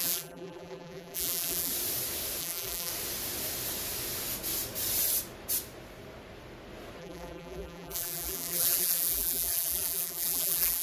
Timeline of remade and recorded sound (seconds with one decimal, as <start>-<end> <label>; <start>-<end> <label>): 0.0-1.7 remade; 1.7-2.4 recorded; 2.4-2.9 remade; 2.9-7.0 recorded; 7.0-10.8 remade